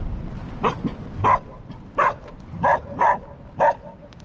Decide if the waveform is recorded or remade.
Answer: recorded